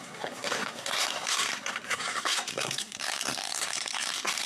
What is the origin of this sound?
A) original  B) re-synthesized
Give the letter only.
B